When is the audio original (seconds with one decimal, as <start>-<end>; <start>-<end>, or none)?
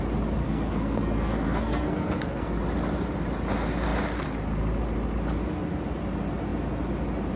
0.0-0.4; 2.6-7.4